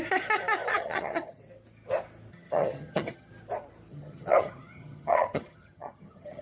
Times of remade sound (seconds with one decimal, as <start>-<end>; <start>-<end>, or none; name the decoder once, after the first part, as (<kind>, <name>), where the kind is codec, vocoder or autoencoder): 0.7-1.4 (vocoder, HiFi-GAN); 2.3-3.3; 3.9-6.4